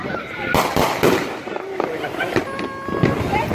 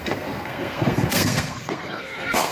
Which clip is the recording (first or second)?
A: first